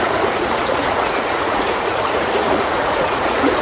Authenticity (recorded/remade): remade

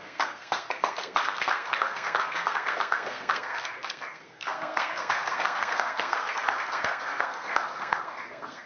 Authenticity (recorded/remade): remade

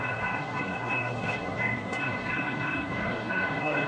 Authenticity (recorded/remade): remade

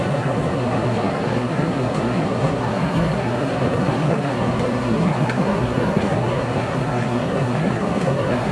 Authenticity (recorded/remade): remade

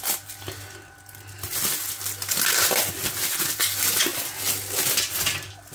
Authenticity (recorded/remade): recorded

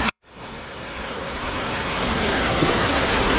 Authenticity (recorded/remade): remade